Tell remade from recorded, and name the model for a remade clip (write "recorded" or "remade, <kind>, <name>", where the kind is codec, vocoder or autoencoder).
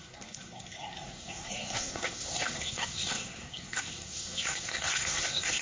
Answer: remade, codec, SNAC